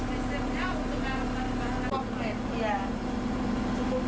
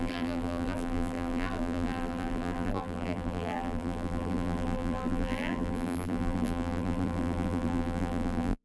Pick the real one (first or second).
first